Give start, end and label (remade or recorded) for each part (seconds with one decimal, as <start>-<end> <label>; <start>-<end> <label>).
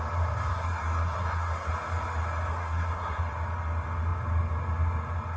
0.0-0.5 recorded; 0.5-1.7 remade; 1.7-2.5 recorded; 2.5-3.2 remade; 3.2-5.4 recorded